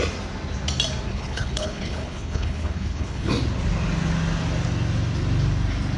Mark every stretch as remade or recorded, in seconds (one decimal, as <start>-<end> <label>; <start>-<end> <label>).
0.0-1.1 recorded; 1.1-3.3 remade; 3.3-6.0 recorded